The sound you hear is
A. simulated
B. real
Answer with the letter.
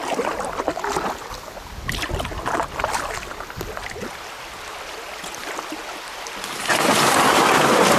B